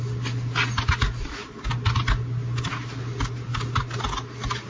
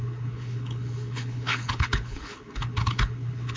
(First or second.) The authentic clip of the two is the first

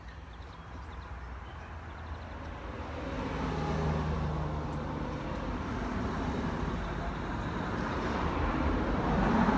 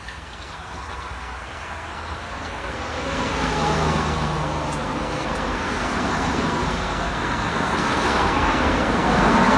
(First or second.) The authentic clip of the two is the first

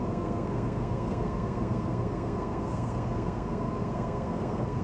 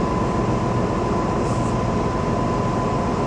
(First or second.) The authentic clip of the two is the second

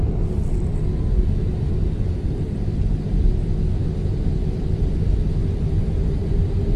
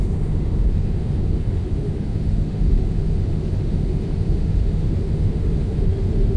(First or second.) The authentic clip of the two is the first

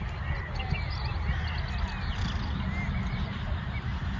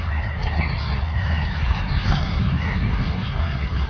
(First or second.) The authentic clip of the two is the first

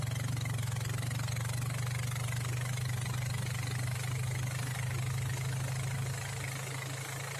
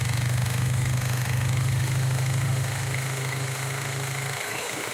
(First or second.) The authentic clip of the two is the first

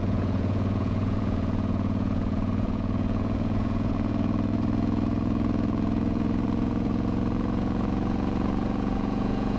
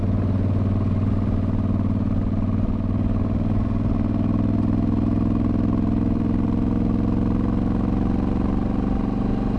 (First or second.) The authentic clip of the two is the second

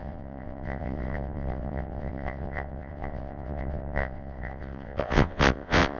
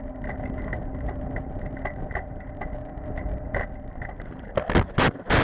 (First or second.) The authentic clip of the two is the second